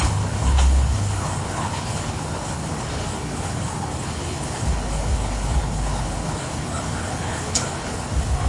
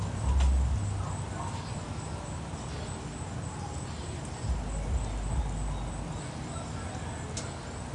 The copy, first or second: first